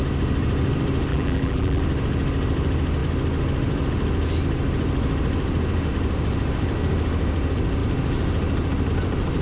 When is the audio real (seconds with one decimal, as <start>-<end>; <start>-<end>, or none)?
0.0-1.1; 1.8-9.4